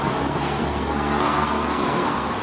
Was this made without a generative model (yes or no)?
no